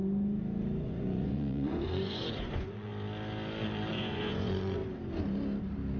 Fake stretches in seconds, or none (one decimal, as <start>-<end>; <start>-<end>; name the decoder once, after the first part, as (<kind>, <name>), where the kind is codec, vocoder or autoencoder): 0.8-2.9 (vocoder, Vocos); 3.9-4.8

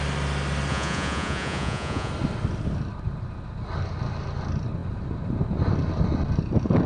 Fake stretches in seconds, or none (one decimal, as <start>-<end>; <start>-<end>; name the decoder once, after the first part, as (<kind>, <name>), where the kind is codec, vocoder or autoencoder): 0.7-2.1 (vocoder, Vocos)

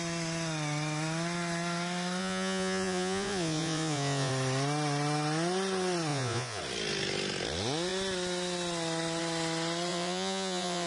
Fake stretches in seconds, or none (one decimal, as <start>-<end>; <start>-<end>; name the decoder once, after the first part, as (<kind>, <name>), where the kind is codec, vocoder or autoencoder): 2.2-4.3 (vocoder, Vocos); 6.1-6.6; 9.9-10.9

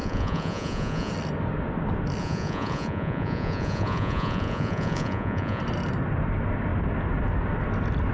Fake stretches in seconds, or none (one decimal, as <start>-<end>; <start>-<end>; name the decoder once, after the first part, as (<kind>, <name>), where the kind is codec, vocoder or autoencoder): 0.0-1.1 (vocoder, Vocos); 2.2-5.6

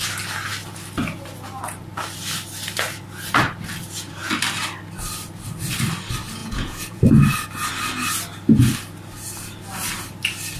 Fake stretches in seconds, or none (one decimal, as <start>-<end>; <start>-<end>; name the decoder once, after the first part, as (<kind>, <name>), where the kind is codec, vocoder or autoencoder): 6.4-7.0 (vocoder, Vocos)

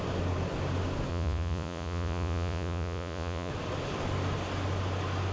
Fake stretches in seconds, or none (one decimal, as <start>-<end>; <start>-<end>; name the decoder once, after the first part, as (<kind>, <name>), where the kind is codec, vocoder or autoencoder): 1.1-3.5 (vocoder, Vocos)